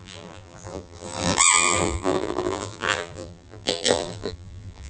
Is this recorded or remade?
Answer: remade